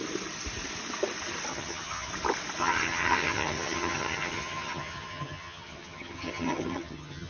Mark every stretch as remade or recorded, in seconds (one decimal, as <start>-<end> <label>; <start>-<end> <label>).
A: 0.0-1.5 recorded; 1.5-2.1 remade; 2.1-2.6 recorded; 2.6-7.3 remade